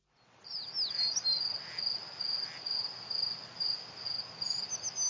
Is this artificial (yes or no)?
no